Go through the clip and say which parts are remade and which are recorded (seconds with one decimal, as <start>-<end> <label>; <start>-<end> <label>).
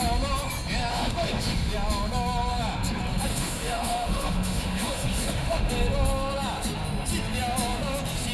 0.0-0.9 recorded; 0.9-1.7 remade; 1.7-3.3 recorded; 3.3-5.7 remade; 5.7-8.3 recorded